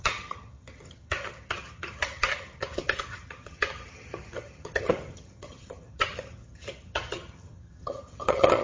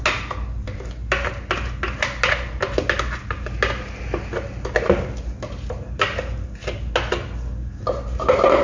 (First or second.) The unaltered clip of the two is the second